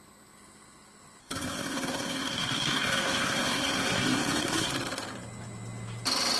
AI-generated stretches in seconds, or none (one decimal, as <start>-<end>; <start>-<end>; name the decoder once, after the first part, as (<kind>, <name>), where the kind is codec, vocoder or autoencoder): 1.2-4.7 (codec, SNAC)